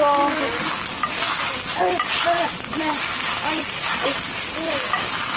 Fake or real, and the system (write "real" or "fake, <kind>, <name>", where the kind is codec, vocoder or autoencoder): real